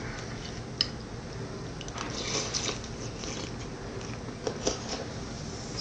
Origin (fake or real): real